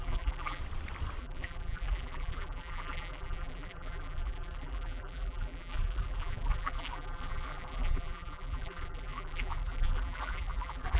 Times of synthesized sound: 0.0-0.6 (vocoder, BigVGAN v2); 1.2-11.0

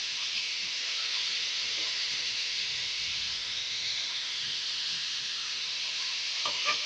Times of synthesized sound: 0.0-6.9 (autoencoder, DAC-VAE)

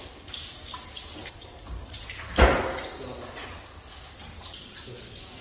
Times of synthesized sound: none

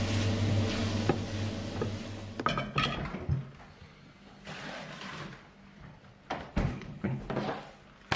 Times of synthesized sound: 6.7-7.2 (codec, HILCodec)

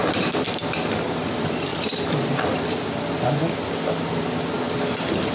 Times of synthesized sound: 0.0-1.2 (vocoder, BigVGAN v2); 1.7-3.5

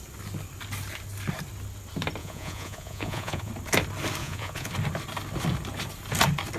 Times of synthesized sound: 2.2-3.5 (vocoder, Vocos); 4.2-4.7